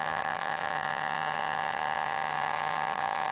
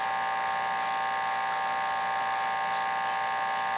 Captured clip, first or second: second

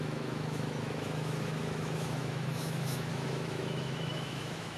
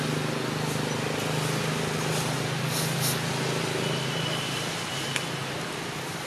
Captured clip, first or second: second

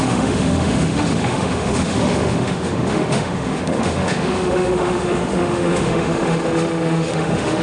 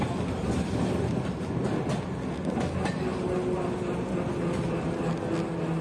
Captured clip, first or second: second